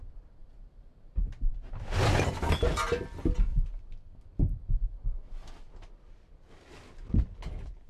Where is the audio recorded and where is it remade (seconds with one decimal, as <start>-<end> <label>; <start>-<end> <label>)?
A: 0.0-3.5 recorded; 3.5-4.1 remade; 4.1-7.9 recorded